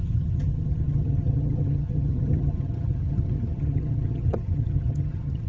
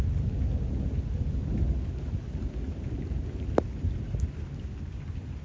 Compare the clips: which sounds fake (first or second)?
first